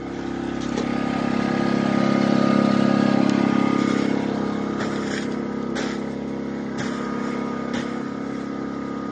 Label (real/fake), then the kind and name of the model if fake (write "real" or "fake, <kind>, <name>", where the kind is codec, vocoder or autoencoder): real